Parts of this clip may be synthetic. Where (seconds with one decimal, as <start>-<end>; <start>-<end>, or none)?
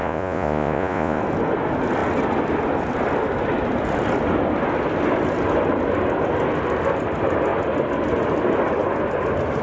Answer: 0.0-1.2